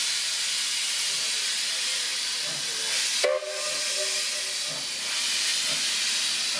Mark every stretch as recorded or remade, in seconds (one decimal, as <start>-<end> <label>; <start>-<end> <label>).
0.0-1.0 remade; 1.0-2.1 recorded; 2.1-4.7 remade; 4.7-6.6 recorded